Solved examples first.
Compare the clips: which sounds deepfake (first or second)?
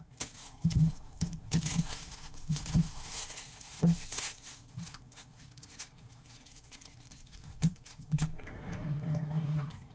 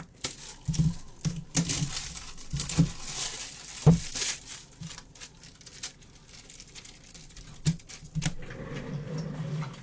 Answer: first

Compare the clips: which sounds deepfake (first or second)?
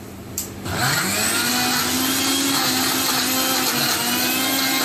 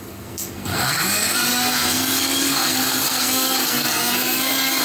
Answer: second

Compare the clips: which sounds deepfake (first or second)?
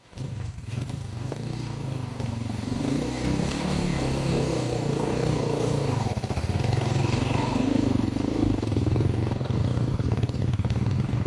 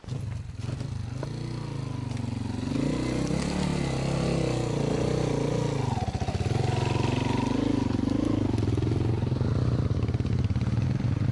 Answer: first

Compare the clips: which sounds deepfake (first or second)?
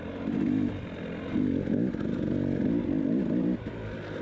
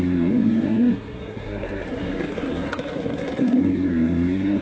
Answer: second